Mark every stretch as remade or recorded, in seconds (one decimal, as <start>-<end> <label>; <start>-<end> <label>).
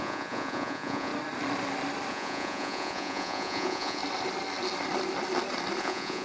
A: 0.0-1.1 remade; 1.1-2.1 recorded; 2.1-4.0 remade; 4.0-5.8 recorded; 5.8-6.2 remade